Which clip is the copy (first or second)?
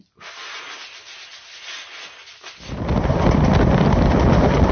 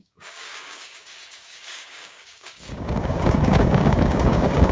second